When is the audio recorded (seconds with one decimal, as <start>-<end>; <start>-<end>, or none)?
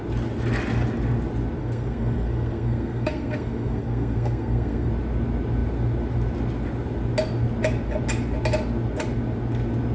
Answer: 0.0-1.6; 4.9-9.9